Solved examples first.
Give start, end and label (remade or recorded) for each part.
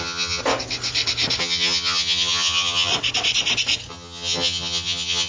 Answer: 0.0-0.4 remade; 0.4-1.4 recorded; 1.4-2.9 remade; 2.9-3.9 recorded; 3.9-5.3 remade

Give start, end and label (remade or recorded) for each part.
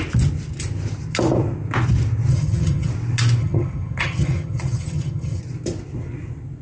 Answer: 0.0-2.3 recorded; 2.3-2.9 remade; 2.9-3.4 recorded; 3.4-5.4 remade; 5.4-6.6 recorded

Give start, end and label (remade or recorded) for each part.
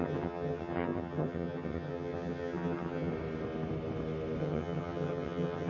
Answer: 0.0-3.1 remade; 3.1-4.4 recorded; 4.4-5.7 remade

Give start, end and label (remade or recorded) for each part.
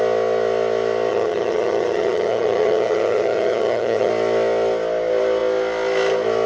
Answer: 0.0-1.1 recorded; 1.1-4.1 remade; 4.1-6.5 recorded